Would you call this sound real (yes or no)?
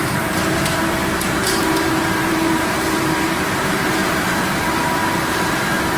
no